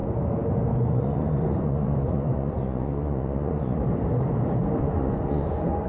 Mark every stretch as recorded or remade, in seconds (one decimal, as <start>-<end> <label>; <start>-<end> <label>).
0.0-0.8 recorded; 0.8-3.8 remade; 3.8-4.8 recorded; 4.8-5.9 remade

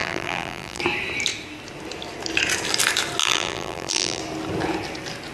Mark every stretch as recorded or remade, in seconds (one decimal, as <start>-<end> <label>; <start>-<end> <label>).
0.0-0.8 remade; 0.8-3.2 recorded; 3.2-4.2 remade; 4.2-5.3 recorded

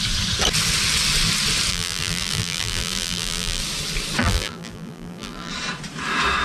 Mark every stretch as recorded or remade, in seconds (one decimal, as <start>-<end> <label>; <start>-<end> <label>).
0.0-1.7 recorded; 1.7-3.6 remade; 3.6-4.2 recorded; 4.2-5.5 remade; 5.5-6.4 recorded

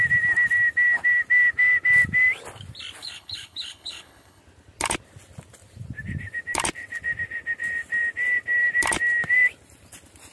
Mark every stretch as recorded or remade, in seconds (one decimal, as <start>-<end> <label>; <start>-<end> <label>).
0.0-3.0 recorded; 3.0-4.4 remade; 4.4-10.3 recorded

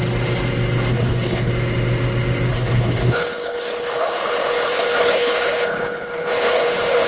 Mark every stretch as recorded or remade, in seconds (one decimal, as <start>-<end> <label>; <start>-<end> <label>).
0.0-0.9 recorded; 0.9-1.5 remade; 1.5-2.5 recorded; 2.5-7.1 remade

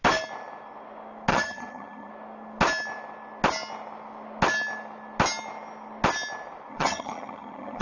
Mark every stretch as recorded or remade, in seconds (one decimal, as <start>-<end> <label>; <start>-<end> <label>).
0.0-1.3 recorded; 1.3-2.1 remade; 2.1-6.7 recorded; 6.7-7.8 remade

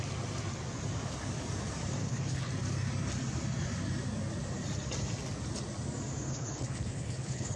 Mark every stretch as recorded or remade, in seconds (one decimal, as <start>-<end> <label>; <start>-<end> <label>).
0.0-2.0 recorded; 2.0-2.5 remade; 2.5-6.3 recorded; 6.3-7.6 remade

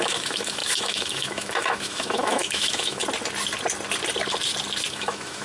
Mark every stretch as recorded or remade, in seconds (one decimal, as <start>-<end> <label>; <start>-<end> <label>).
0.0-3.0 remade; 3.0-4.9 recorded; 4.9-5.4 remade